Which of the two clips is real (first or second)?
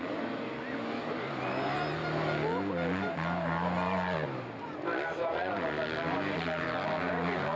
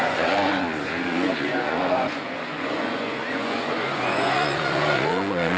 first